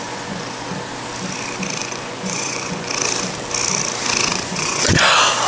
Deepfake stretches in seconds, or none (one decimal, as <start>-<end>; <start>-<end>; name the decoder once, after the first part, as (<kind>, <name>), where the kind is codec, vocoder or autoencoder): 0.0-0.7 (vocoder, Vocos); 1.8-2.9; 4.3-5.1

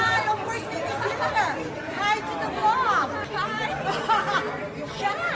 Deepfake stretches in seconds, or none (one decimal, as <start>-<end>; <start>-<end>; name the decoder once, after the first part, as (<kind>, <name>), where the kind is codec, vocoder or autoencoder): 0.0-2.6 (vocoder, BigVGAN v2); 4.5-5.3

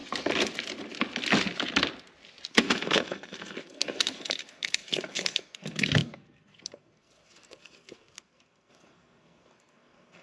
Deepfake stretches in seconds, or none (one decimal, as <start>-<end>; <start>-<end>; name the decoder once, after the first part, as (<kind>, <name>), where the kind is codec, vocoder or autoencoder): 2.5-10.2 (codec, SNAC)

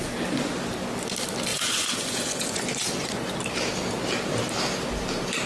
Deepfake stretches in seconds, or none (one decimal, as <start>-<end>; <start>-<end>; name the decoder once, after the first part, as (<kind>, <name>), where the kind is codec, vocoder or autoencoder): 1.5-3.3 (vocoder, Vocos)

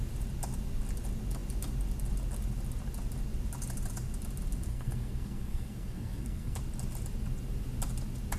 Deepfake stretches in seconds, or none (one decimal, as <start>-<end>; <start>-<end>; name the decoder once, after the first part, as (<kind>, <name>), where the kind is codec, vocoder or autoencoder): 4.7-6.6 (codec, SNAC)

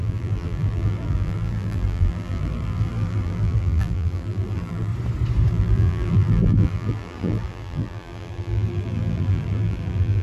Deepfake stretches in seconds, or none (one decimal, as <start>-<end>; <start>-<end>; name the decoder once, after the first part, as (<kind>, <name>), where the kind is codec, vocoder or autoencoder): 0.0-4.9 (vocoder, BigVGAN v2); 5.5-10.2